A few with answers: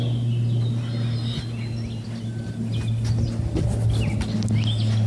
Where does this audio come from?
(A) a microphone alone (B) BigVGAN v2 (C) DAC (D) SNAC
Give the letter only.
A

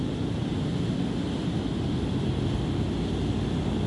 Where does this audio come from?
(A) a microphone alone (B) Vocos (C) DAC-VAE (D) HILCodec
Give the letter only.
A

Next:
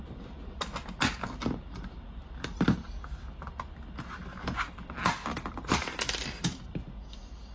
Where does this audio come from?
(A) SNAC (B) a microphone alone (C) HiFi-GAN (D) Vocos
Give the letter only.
B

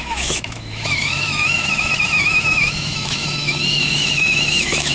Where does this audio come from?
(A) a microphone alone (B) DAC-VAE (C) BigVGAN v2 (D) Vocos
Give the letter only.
B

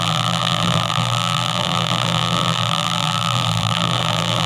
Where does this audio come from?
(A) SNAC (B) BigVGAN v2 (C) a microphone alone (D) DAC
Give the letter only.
B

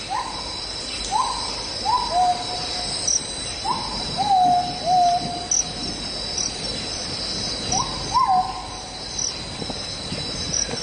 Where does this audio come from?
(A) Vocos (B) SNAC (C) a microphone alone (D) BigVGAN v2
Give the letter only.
C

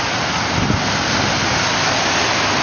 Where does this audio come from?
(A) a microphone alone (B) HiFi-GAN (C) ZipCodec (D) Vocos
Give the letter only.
A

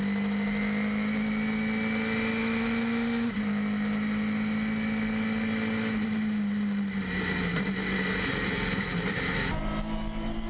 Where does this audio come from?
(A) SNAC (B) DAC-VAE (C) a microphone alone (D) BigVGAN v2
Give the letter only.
C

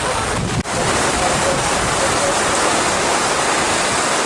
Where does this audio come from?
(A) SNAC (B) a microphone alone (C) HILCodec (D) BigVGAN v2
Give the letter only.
D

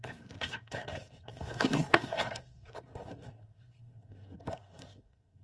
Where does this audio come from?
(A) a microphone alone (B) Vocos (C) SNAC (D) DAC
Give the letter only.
C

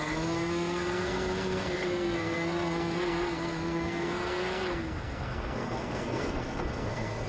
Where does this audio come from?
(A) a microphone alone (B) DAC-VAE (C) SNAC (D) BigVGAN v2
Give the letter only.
C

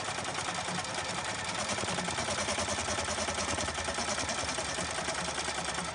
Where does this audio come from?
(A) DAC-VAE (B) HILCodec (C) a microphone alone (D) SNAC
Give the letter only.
C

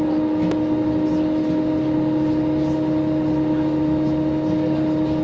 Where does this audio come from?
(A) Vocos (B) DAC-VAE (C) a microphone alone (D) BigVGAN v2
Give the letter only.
C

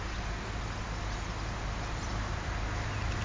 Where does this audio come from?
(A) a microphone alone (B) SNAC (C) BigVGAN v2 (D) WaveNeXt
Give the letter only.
A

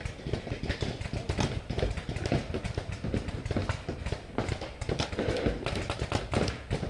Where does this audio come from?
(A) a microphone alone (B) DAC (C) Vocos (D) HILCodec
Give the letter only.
A